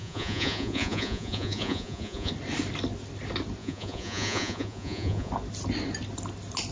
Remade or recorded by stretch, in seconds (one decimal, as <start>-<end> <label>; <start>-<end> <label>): 0.0-2.3 remade; 2.3-3.6 recorded; 3.6-5.3 remade; 5.3-6.7 recorded